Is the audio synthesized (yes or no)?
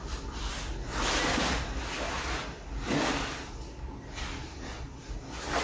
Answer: no